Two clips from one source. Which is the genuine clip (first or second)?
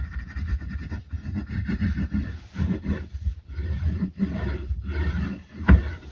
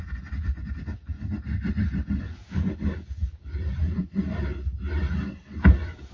second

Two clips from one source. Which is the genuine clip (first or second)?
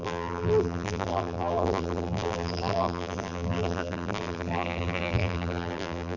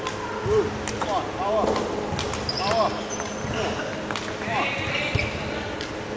second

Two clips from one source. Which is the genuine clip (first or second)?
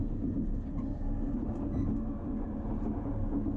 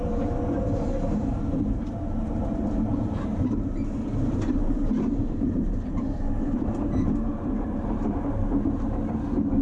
first